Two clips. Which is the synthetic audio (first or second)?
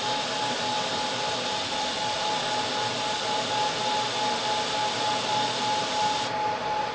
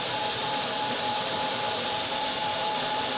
second